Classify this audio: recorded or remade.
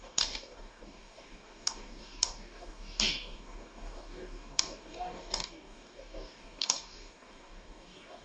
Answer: remade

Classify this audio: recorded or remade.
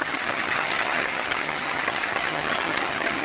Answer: remade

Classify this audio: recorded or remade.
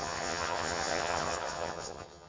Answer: remade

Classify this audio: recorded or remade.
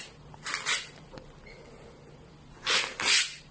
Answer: recorded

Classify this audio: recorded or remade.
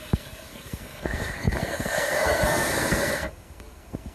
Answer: remade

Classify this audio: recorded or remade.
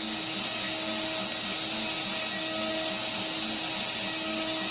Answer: recorded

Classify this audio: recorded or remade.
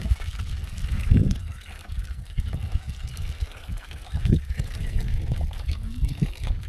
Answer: remade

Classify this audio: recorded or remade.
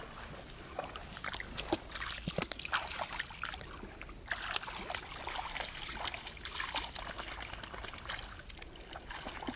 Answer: recorded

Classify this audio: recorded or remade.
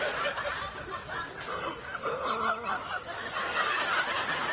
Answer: recorded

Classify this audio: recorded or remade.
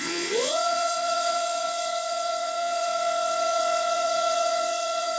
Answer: remade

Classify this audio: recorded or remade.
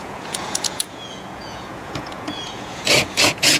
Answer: remade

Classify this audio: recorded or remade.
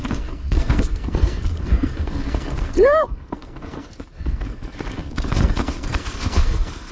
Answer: remade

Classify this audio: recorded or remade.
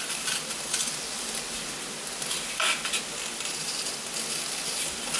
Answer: recorded